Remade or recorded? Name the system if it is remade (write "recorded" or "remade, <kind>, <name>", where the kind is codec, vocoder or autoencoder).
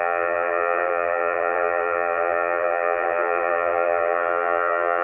remade, vocoder, BigVGAN v2